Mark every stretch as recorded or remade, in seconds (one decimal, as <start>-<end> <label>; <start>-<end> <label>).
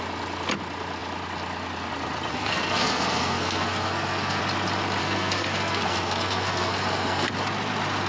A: 0.0-2.3 recorded; 2.3-4.4 remade; 4.4-5.0 recorded; 5.0-7.3 remade; 7.3-8.1 recorded